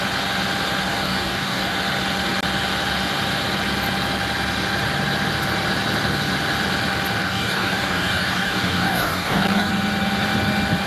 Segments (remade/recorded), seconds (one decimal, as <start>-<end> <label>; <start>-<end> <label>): 0.0-0.9 recorded; 0.9-1.7 remade; 1.7-7.2 recorded; 7.2-9.7 remade; 9.7-10.9 recorded